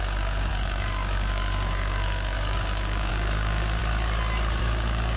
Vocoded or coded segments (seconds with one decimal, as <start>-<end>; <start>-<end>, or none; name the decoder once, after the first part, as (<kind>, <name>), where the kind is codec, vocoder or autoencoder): 0.0-3.8 (codec, DAC); 4.6-5.2